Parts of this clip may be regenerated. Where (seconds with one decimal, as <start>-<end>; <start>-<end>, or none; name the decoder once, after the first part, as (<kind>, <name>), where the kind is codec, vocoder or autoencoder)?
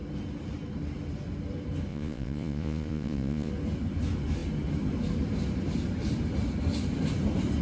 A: 1.9-3.5 (vocoder, Vocos)